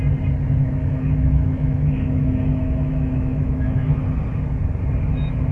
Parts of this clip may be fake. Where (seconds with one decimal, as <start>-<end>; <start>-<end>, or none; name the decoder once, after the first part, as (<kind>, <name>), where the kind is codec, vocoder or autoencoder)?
0.6-3.9 (autoencoder, DAC-VAE)